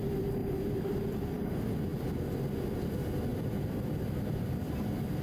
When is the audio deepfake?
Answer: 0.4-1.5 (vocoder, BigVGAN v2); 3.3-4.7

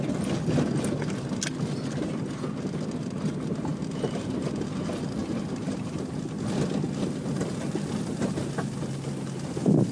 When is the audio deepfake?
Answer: 3.7-4.3 (vocoder, BigVGAN v2); 5.2-6.1

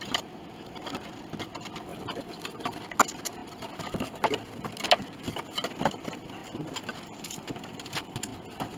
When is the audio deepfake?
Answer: 1.9-2.6 (vocoder, BigVGAN v2)

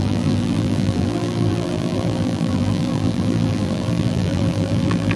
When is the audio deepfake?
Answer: 0.0-5.2 (vocoder, BigVGAN v2)

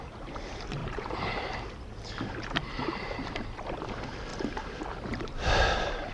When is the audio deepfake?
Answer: 0.8-1.6 (vocoder, BigVGAN v2); 4.3-6.1

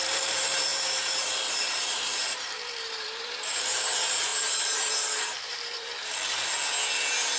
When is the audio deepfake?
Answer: 0.0-5.9 (vocoder, BigVGAN v2)